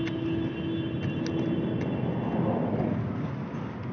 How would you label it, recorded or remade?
recorded